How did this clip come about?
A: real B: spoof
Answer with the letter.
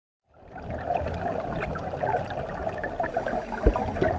A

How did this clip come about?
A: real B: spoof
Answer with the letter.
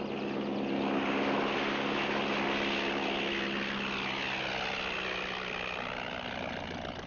A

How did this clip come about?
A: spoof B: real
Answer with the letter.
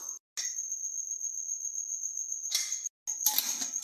B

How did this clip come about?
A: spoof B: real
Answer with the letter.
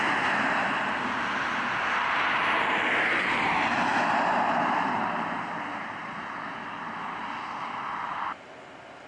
B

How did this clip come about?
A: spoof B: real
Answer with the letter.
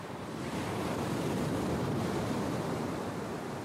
A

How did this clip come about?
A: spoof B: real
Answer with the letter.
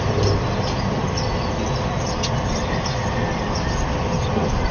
B